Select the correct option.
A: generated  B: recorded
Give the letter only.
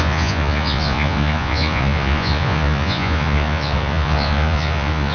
A